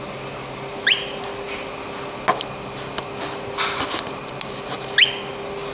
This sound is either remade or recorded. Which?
recorded